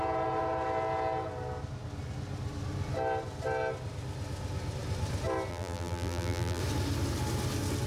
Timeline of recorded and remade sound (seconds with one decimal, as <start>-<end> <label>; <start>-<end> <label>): 0.0-5.5 recorded; 5.5-6.6 remade; 6.6-7.9 recorded